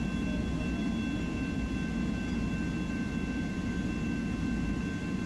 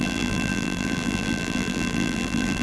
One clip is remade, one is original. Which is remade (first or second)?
second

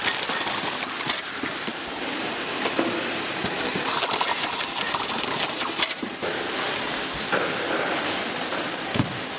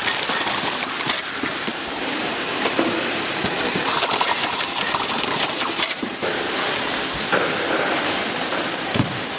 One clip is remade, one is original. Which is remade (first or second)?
second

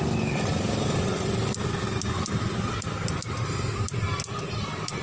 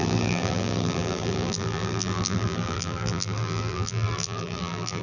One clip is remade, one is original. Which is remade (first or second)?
second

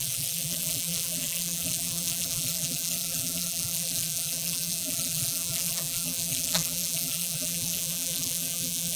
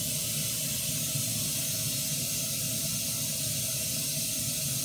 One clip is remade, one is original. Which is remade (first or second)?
first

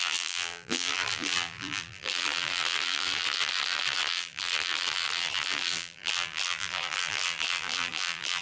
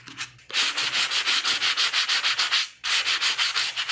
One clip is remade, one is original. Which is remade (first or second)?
first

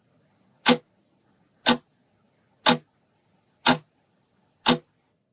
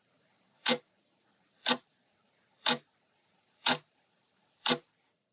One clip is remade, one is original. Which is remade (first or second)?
second